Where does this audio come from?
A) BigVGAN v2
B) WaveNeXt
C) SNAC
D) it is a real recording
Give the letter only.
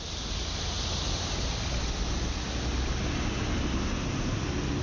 D